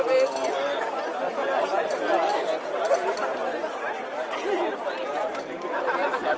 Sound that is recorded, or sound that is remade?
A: recorded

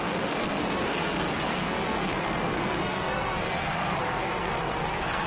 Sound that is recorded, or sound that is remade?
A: remade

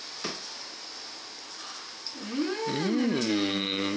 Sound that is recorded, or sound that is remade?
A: recorded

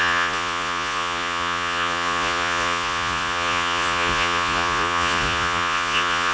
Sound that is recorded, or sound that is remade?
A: remade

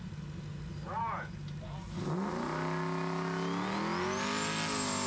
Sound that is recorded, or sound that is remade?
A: recorded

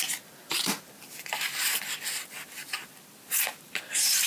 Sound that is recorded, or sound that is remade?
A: recorded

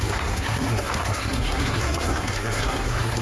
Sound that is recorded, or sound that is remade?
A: remade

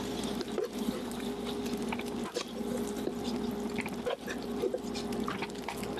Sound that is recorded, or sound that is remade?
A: recorded